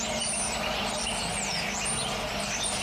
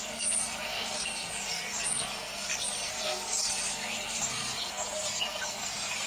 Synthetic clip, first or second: second